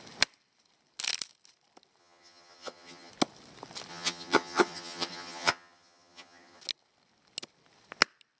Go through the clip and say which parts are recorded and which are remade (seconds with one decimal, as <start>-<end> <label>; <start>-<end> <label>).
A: 0.0-2.0 recorded; 2.0-3.1 remade; 3.1-3.9 recorded; 3.9-6.6 remade; 6.6-8.4 recorded